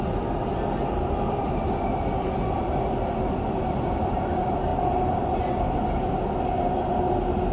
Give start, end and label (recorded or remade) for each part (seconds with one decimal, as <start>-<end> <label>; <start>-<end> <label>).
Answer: 0.0-7.5 recorded